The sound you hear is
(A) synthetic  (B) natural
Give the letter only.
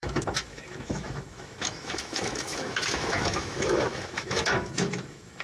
A